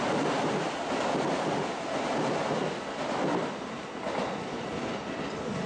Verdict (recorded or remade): recorded